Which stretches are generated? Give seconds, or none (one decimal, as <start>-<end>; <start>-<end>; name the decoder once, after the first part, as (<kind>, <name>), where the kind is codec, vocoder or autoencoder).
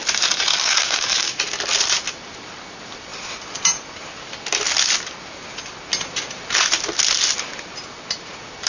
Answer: 0.5-1.4 (codec, DAC)